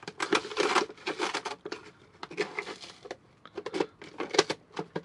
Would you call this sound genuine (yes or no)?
yes